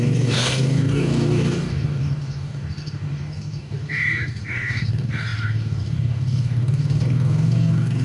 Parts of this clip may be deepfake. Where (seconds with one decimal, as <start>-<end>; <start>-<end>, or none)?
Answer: 0.0-8.0